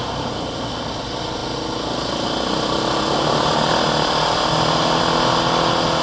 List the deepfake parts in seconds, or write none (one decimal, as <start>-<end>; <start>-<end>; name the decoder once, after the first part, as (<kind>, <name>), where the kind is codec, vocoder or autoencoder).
none